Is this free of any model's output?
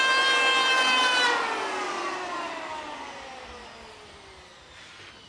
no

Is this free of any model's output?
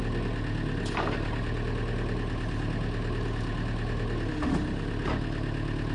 yes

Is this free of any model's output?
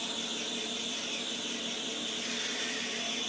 yes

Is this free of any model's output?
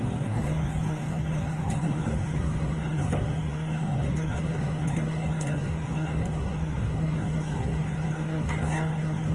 no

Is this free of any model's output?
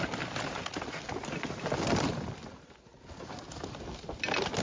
yes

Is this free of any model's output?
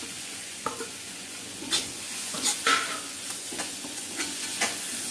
no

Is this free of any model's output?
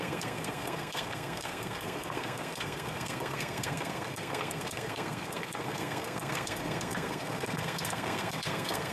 no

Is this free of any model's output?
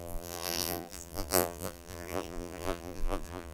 no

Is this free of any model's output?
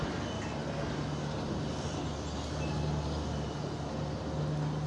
yes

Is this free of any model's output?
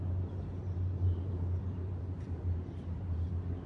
yes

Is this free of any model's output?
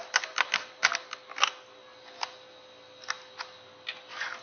yes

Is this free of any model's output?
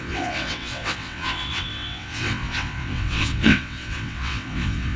no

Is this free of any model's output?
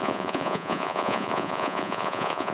no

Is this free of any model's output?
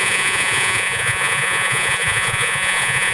no